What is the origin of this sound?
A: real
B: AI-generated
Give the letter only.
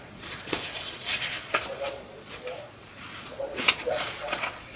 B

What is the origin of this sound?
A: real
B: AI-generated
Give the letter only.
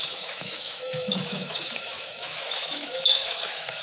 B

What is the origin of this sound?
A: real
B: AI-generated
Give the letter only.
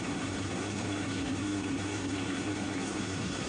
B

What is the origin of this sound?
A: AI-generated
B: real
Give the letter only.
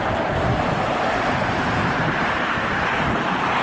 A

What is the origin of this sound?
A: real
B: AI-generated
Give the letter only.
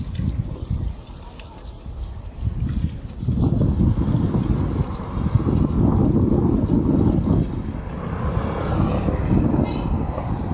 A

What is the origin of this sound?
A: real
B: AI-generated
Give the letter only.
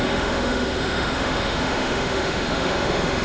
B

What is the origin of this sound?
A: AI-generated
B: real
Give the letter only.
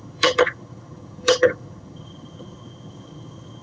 A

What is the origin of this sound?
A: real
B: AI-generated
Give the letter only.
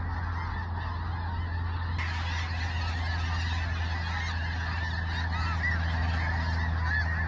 A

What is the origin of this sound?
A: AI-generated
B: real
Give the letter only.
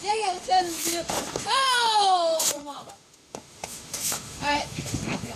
A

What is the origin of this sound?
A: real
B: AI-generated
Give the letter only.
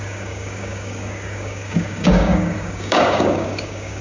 B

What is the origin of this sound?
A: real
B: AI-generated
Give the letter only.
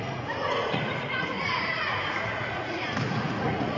B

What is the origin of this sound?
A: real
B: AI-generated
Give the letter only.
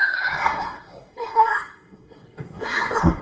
B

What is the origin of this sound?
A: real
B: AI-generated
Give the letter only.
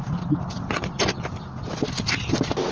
A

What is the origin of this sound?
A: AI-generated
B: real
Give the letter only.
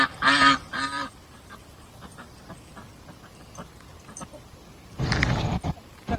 A